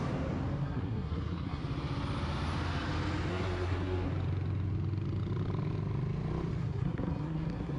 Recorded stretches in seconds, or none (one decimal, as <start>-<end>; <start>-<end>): 0.0-0.6; 1.6-3.3; 4.1-6.6